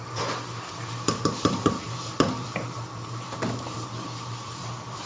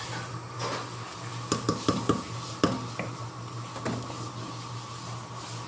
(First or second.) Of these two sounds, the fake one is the first